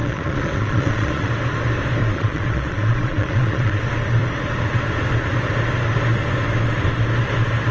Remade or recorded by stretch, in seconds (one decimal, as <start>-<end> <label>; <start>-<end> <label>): 0.0-1.3 remade; 1.3-2.0 recorded; 2.0-3.8 remade; 3.8-7.7 recorded